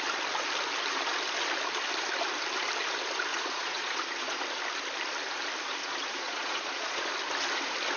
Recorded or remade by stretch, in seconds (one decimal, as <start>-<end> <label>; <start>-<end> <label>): 0.0-3.3 recorded; 3.3-4.4 remade; 4.4-5.8 recorded; 5.8-7.1 remade; 7.1-8.0 recorded